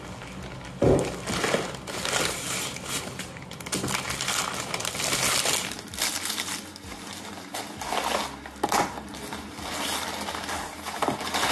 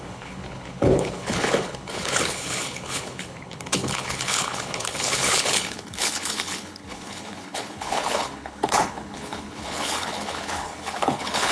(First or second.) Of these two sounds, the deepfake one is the second